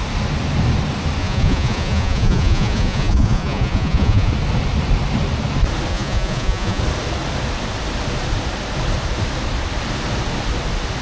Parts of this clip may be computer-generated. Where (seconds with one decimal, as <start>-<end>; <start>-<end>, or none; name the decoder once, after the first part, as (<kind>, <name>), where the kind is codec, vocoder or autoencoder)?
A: 1.2-4.3 (vocoder, Vocos); 5.9-6.8